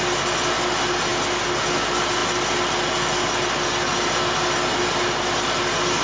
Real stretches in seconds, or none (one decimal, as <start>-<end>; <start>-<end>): 0.0-6.0